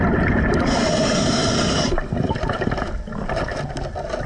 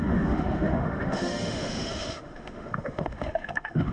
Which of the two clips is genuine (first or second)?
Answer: first